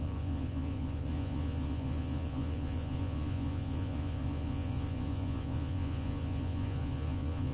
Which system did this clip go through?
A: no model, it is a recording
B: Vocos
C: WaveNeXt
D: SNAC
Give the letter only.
B